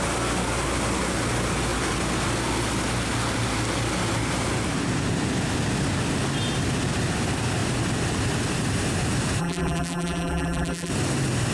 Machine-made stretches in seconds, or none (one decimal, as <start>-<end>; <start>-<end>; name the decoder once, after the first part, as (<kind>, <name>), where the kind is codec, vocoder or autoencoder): 9.4-10.9 (vocoder, BigVGAN v2)